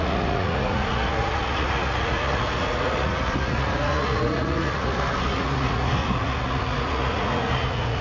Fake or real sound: fake